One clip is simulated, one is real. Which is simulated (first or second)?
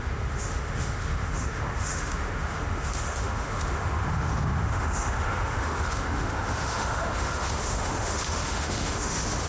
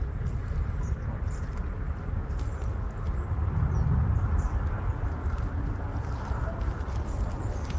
first